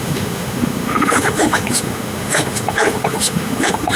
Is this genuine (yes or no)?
no